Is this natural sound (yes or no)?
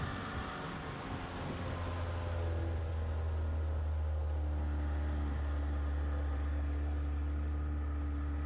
yes